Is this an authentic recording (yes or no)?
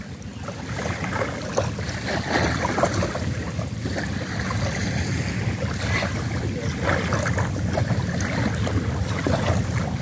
yes